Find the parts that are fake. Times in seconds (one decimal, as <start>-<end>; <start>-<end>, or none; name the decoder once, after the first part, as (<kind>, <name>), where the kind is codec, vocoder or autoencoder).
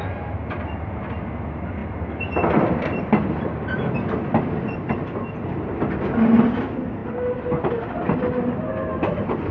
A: 1.8-4.7 (vocoder, BigVGAN v2); 7.0-8.7